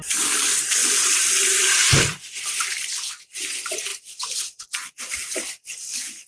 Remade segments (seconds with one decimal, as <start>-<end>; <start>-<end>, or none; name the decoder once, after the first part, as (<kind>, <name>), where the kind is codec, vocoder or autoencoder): 0.8-3.2 (vocoder, BigVGAN v2); 3.9-5.1